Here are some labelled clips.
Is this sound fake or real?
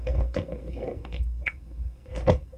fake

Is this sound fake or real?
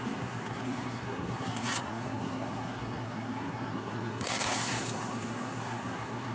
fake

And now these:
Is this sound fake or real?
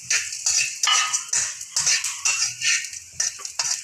real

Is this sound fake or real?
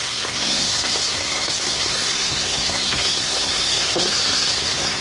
fake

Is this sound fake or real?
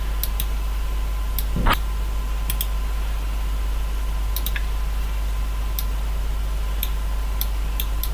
real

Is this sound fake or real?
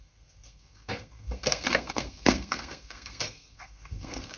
fake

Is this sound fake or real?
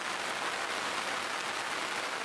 real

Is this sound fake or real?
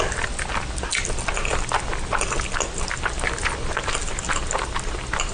real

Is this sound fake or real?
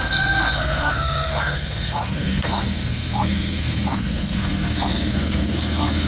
fake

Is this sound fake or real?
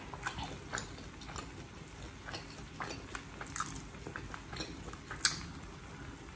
real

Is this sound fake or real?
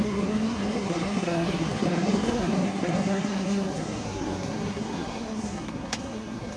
fake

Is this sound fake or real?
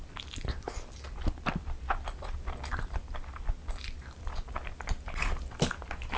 real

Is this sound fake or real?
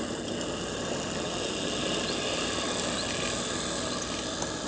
real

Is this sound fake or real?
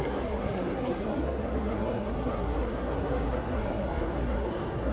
fake